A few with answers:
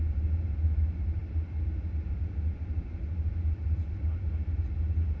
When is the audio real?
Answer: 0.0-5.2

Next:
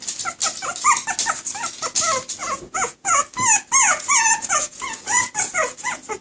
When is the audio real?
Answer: 0.0-2.4; 3.2-3.8

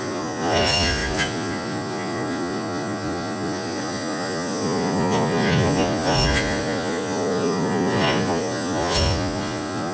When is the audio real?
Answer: none

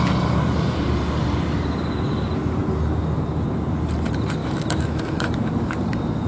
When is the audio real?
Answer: 0.0-4.4; 5.5-6.3